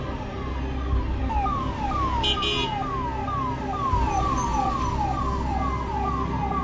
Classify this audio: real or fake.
real